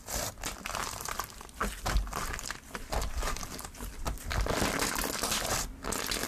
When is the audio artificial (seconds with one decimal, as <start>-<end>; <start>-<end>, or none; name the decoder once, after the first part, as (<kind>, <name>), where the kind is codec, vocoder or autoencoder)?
0.8-4.2 (vocoder, BigVGAN v2)